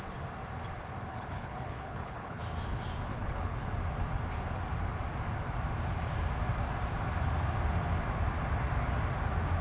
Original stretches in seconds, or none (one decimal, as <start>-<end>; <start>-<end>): 0.0-1.1; 2.4-3.1; 3.7-9.6